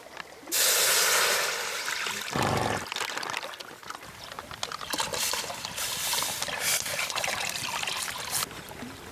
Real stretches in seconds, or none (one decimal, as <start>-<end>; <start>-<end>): 0.0-6.9; 7.6-9.1